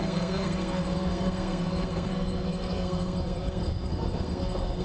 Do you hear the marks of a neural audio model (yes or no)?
yes